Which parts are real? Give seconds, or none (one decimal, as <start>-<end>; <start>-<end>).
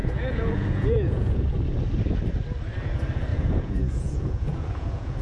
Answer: 1.4-3.3